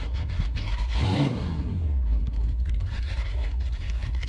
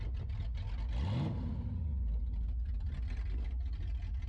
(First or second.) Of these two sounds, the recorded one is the second